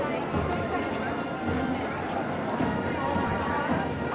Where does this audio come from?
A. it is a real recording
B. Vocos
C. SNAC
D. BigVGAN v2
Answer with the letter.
A